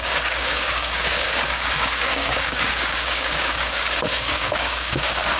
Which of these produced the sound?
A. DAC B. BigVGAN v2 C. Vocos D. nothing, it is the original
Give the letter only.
A